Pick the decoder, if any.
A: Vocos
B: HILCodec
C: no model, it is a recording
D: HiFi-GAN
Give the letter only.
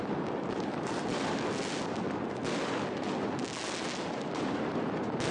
C